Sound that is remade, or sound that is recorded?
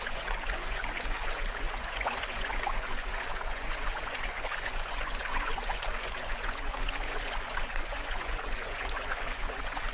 remade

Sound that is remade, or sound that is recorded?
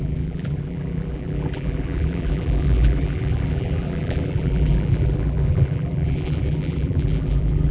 remade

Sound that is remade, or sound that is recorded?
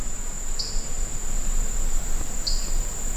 recorded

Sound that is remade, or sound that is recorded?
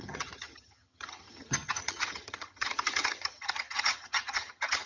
remade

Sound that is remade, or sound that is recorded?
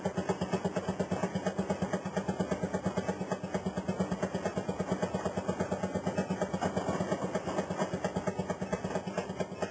recorded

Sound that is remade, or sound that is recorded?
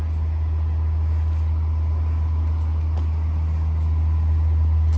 recorded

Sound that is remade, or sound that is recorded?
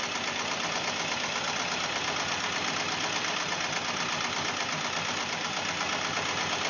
recorded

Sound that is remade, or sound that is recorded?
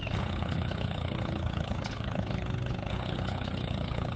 remade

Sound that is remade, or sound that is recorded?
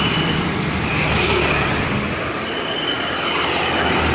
recorded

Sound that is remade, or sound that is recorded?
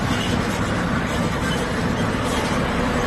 recorded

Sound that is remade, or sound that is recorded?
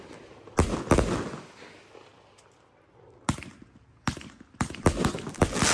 recorded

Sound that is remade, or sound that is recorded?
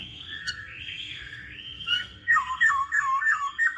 remade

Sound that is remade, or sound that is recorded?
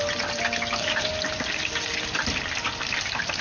recorded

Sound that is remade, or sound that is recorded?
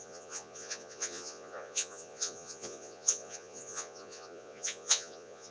remade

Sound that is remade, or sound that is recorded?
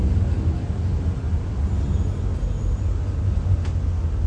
recorded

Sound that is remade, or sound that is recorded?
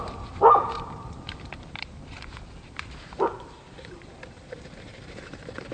remade